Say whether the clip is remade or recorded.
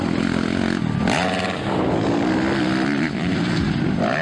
recorded